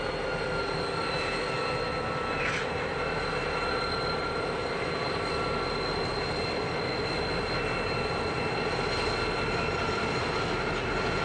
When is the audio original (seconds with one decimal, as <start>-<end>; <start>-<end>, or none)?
0.0-4.6; 5.3-11.2